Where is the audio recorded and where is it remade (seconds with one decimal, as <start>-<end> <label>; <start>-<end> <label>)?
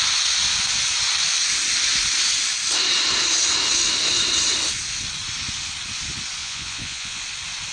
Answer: 0.0-6.4 recorded; 6.4-7.2 remade; 7.2-7.7 recorded